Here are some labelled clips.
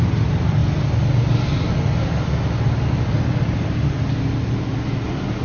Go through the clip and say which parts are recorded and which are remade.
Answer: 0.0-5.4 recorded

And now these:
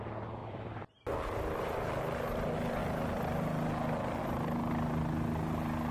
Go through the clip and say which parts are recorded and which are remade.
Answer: 0.0-0.4 recorded; 0.4-0.9 remade; 0.9-5.9 recorded

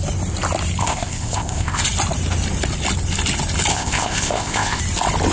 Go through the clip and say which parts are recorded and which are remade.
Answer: 0.0-0.8 recorded; 0.8-1.8 remade; 1.8-3.7 recorded; 3.7-4.8 remade; 4.8-5.3 recorded

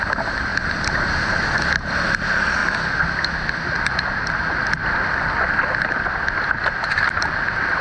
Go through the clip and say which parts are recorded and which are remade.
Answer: 0.0-7.8 recorded

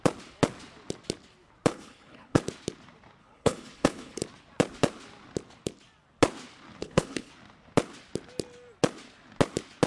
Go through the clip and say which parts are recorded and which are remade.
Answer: 0.0-1.7 recorded; 1.7-2.4 remade; 2.4-3.2 recorded; 3.2-4.2 remade; 4.2-6.8 recorded; 6.8-7.3 remade; 7.3-9.9 recorded